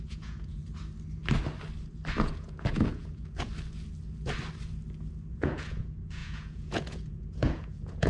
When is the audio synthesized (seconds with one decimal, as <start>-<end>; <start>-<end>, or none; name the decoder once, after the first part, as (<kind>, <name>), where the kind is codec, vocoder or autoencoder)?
0.0-0.6 (vocoder, Vocos); 2.2-3.5; 5.3-8.1